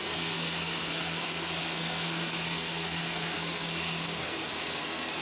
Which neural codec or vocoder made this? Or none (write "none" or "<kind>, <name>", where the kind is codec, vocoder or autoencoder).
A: codec, SNAC